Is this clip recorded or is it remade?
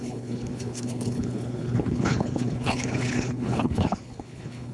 remade